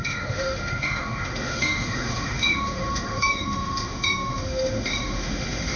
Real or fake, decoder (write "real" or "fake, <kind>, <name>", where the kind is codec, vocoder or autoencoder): fake, autoencoder, DAC-VAE